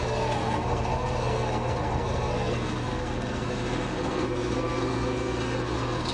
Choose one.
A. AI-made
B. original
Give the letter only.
A